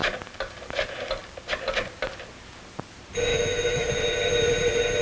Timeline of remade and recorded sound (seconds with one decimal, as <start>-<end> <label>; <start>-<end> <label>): 0.0-3.3 recorded; 3.3-3.9 remade; 3.9-5.0 recorded